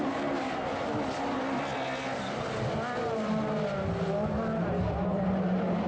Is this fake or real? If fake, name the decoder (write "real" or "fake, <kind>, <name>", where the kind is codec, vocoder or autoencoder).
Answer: real